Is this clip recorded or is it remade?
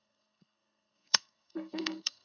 remade